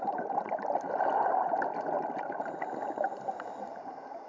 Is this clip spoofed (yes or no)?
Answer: no